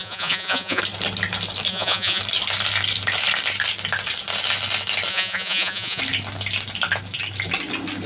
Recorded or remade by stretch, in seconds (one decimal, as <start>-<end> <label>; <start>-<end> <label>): 0.0-0.8 remade; 0.8-1.7 recorded; 1.7-2.2 remade; 2.2-5.1 recorded; 5.1-6.0 remade; 6.0-8.1 recorded